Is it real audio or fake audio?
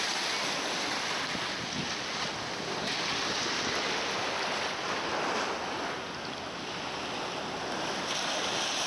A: real